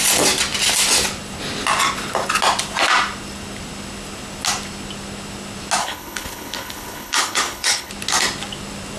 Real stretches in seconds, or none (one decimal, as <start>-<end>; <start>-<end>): 0.0-5.8; 7.9-9.0